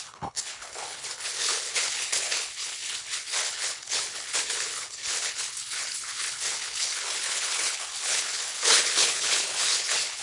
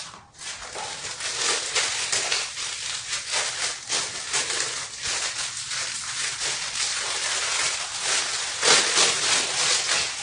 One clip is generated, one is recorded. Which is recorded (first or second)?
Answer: second